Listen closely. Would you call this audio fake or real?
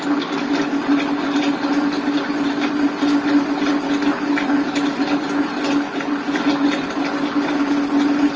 real